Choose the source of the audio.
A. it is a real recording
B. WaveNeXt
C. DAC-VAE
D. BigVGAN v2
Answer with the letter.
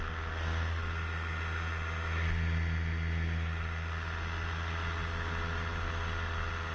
A